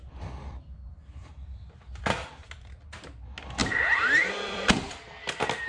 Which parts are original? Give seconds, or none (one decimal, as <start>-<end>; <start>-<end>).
0.0-3.6